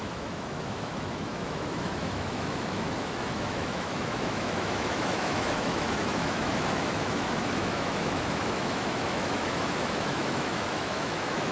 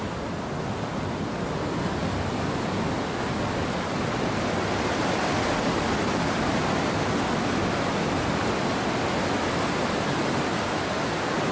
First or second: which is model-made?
first